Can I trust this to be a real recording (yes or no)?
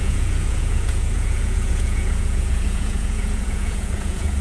no